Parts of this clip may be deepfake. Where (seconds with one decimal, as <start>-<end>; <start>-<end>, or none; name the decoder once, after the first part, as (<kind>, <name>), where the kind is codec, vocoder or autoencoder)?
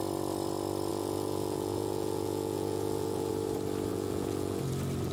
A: 0.9-3.3 (vocoder, Vocos); 3.9-4.6